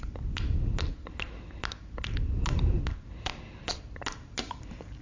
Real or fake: real